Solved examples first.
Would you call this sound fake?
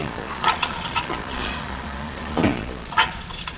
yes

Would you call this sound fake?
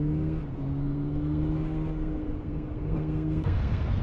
yes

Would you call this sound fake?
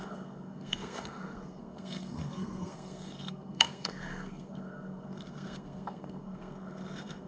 yes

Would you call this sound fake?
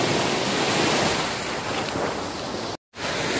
no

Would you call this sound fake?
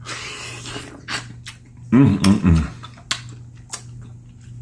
no